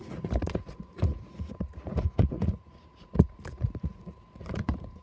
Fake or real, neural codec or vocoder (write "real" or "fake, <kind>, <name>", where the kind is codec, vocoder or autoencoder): fake, vocoder, Vocos